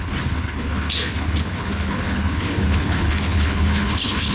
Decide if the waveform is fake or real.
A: fake